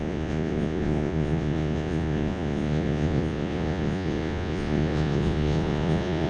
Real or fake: fake